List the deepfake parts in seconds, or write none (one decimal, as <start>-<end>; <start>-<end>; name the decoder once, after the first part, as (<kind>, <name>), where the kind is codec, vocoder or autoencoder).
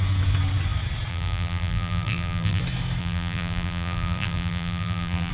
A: 1.1-2.6 (vocoder, BigVGAN v2); 3.0-5.3